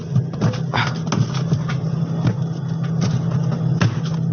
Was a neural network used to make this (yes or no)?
no